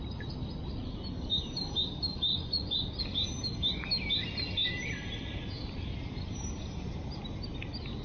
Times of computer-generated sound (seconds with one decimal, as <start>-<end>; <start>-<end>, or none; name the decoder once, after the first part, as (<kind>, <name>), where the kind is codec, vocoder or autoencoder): 2.3-3.0 (vocoder, Vocos)